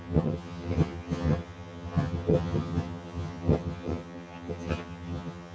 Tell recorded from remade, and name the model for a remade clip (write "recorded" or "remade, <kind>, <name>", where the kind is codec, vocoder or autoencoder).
remade, vocoder, HiFi-GAN